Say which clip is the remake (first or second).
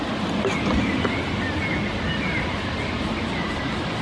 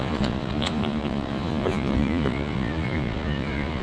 second